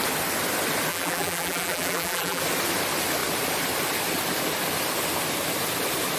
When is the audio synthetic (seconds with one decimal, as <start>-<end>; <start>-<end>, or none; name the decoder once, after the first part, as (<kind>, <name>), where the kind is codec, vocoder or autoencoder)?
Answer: 0.9-2.4 (vocoder, BigVGAN v2)